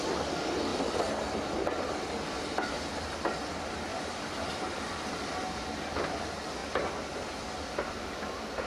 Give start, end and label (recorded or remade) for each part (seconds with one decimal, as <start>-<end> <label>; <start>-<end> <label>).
0.0-3.9 recorded; 3.9-5.3 remade; 5.3-8.7 recorded